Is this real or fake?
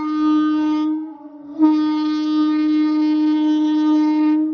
fake